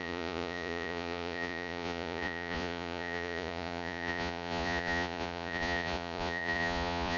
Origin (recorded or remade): remade